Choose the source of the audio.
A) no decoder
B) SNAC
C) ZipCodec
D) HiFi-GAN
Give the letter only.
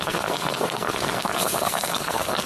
B